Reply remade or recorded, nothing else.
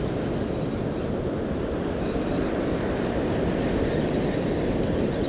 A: recorded